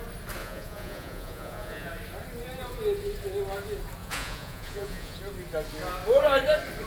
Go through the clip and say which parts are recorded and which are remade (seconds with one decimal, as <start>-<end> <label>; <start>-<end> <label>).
0.0-0.4 recorded; 0.4-1.9 remade; 1.9-4.0 recorded; 4.0-5.2 remade; 5.2-6.9 recorded